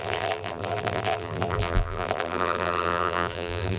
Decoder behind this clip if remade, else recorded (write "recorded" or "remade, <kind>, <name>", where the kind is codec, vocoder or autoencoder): remade, vocoder, BigVGAN v2